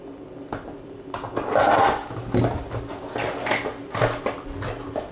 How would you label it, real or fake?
real